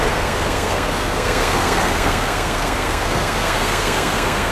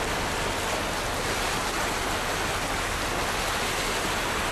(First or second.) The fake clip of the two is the first